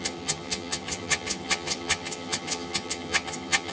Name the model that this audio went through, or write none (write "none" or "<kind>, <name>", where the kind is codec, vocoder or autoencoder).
vocoder, HiFi-GAN